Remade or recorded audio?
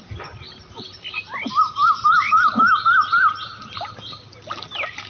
recorded